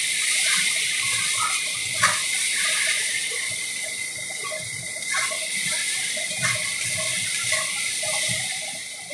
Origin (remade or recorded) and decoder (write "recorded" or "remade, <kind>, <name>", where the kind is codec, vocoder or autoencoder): remade, vocoder, BigVGAN v2